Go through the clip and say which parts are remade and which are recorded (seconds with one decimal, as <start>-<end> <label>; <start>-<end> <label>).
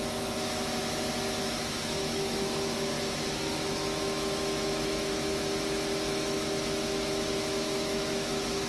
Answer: 0.0-0.8 remade; 0.8-1.4 recorded; 1.4-8.7 remade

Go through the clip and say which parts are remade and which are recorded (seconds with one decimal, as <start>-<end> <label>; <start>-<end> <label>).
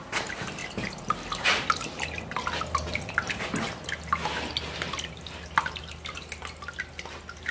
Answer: 0.0-7.5 recorded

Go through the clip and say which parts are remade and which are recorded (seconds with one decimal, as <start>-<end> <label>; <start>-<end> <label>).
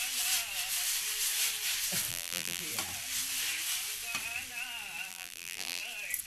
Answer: 0.0-2.1 recorded; 2.1-2.6 remade; 2.6-5.1 recorded; 5.1-5.8 remade; 5.8-6.3 recorded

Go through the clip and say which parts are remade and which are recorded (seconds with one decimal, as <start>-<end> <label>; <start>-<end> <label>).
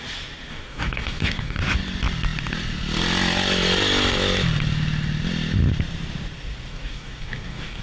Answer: 0.0-0.5 recorded; 0.5-1.6 remade; 1.6-6.7 recorded; 6.7-7.8 remade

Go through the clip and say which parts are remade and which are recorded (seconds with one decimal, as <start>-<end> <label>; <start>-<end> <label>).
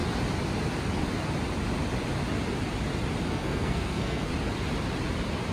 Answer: 0.0-3.3 recorded; 3.3-4.3 remade; 4.3-5.5 recorded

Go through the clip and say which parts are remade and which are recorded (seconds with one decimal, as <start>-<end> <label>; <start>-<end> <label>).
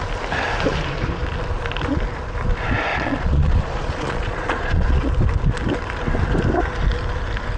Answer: 0.0-2.9 recorded; 2.9-5.1 remade; 5.1-7.6 recorded